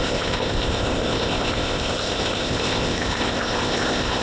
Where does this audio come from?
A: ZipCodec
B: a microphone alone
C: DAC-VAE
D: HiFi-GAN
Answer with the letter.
A